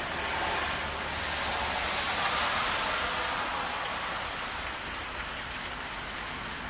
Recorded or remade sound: recorded